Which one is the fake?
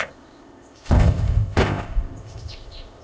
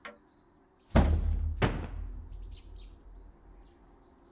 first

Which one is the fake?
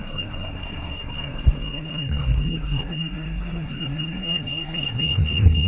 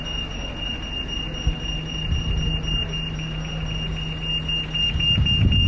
first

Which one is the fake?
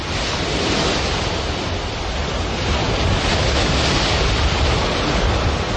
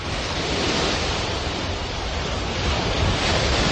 second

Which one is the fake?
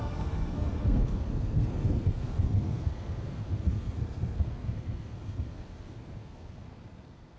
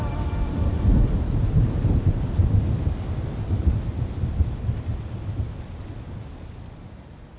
first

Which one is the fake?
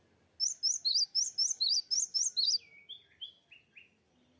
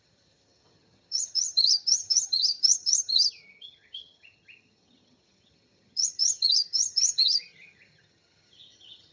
second